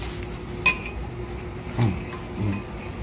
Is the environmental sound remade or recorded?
recorded